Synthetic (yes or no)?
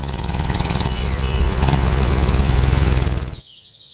yes